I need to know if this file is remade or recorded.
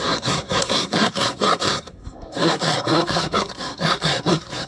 remade